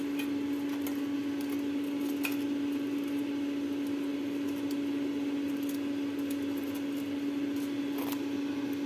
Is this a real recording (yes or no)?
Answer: yes